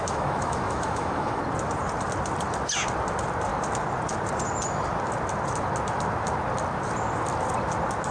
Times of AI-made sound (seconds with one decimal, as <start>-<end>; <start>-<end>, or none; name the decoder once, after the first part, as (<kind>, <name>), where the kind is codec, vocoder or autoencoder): 0.0-1.4 (autoencoder, DAC-VAE)

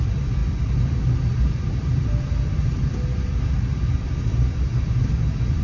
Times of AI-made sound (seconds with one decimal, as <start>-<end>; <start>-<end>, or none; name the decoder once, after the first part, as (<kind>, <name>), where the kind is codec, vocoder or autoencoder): none